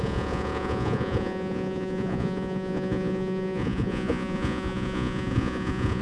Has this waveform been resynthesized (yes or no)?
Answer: yes